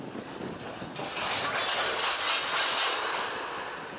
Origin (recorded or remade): recorded